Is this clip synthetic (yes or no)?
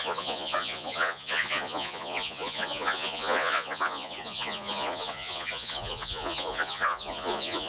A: yes